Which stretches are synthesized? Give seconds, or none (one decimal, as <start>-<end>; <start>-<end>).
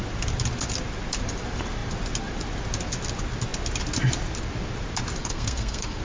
5.2-6.0